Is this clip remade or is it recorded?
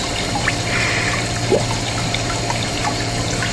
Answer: remade